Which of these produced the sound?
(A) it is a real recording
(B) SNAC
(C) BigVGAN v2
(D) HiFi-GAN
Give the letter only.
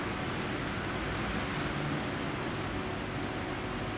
A